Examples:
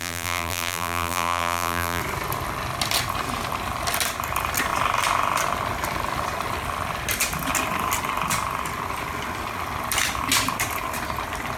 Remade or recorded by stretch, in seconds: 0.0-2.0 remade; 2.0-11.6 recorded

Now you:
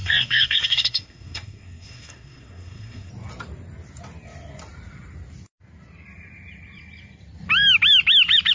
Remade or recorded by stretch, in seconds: 0.0-3.1 remade; 3.1-8.5 recorded

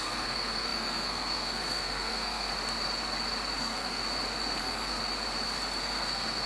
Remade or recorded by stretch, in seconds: 0.0-2.5 remade; 2.5-3.6 recorded; 3.6-4.0 remade; 4.0-4.6 recorded; 4.6-5.0 remade; 5.0-5.8 recorded; 5.8-6.5 remade

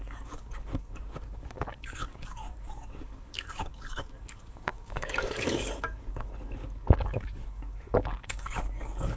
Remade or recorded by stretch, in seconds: 0.0-9.2 remade

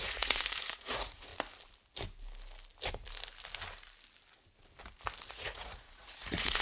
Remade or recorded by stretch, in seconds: 0.0-1.3 remade; 1.3-5.3 recorded; 5.3-6.6 remade

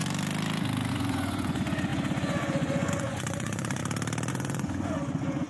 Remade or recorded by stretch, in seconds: 0.0-0.9 recorded; 0.9-3.8 remade; 3.8-4.3 recorded; 4.3-5.5 remade